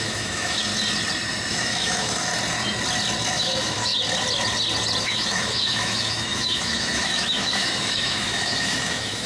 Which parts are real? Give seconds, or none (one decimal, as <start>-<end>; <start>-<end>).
0.7-1.5; 2.3-3.3; 3.9-5.0